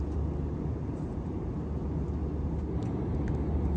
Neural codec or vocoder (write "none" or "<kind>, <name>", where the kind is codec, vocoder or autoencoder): none